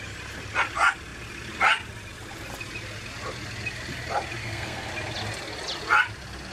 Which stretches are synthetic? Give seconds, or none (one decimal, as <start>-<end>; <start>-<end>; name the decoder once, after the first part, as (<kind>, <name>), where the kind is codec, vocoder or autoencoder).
4.4-4.9 (codec, SNAC)